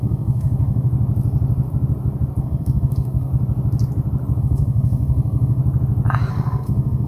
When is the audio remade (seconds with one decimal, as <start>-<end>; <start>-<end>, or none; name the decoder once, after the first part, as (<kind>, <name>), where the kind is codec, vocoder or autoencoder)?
0.0-0.9 (codec, SNAC); 2.4-3.3; 4.4-5.6; 6.3-7.1